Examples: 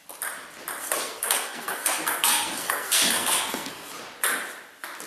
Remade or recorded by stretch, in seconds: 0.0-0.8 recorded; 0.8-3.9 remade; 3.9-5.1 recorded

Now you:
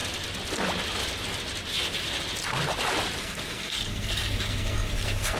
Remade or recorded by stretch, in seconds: 0.0-3.2 recorded; 3.2-5.4 remade